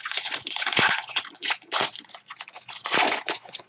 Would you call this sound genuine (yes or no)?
no